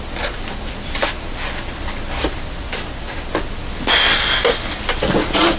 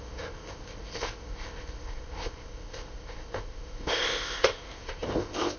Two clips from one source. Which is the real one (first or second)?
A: first